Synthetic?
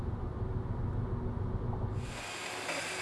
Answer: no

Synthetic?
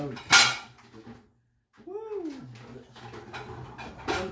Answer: no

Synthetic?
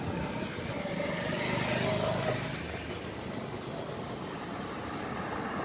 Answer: no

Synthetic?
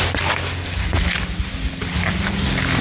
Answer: no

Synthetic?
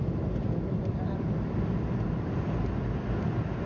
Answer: no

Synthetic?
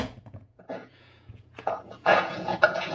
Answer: yes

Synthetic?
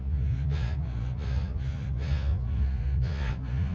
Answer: yes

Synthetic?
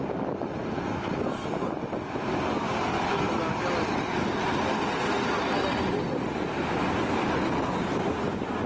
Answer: no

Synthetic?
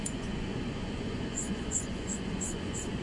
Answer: yes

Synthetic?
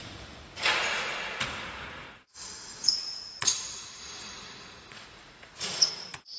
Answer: yes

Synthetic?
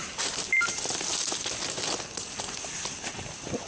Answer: no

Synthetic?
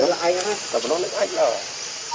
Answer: no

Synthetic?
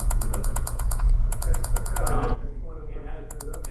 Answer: yes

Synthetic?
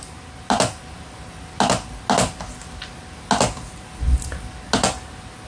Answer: no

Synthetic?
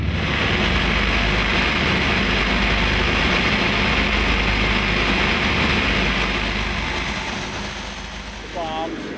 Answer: no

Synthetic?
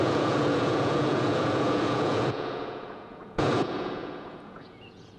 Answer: yes